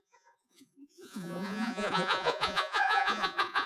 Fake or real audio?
fake